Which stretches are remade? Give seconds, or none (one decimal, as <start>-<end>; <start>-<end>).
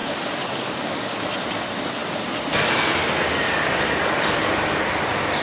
0.0-1.3; 3.6-4.9